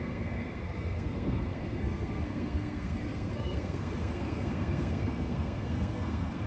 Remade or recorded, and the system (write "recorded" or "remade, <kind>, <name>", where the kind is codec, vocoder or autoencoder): remade, codec, SNAC